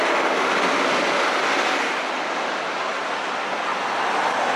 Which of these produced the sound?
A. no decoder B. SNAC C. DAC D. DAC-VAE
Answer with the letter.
A